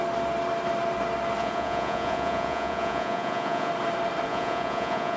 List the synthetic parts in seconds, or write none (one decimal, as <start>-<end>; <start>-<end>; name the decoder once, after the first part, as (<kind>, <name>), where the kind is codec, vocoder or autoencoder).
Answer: 1.4-3.7 (vocoder, Vocos); 4.3-5.2